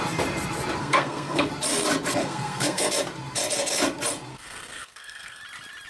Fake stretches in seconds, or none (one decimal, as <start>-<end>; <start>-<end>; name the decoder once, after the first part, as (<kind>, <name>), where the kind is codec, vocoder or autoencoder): 0.8-1.5 (codec, SNAC); 2.2-2.9; 4.3-5.4